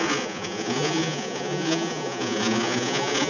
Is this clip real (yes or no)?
no